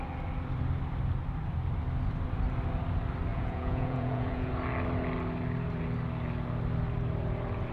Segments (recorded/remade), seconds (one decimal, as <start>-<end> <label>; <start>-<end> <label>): 0.0-3.3 recorded; 3.3-4.5 remade; 4.5-7.7 recorded